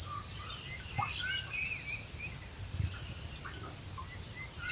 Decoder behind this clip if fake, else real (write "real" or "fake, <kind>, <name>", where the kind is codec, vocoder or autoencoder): fake, vocoder, BigVGAN v2